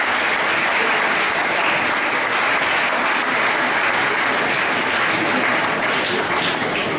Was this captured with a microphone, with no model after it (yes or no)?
yes